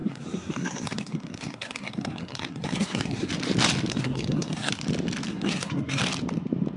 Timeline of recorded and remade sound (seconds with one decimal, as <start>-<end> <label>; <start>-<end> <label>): 0.0-3.3 remade; 3.3-3.9 recorded; 3.9-4.7 remade; 4.7-5.3 recorded; 5.3-6.0 remade; 6.0-6.8 recorded